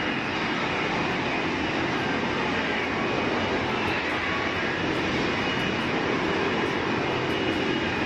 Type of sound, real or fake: real